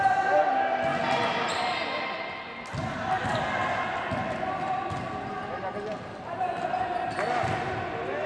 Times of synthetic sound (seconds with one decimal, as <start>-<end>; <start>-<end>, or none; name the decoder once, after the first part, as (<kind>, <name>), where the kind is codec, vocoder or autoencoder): none